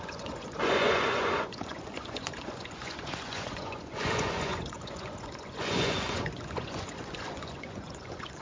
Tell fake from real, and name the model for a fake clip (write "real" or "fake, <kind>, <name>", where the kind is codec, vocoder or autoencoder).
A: fake, vocoder, Vocos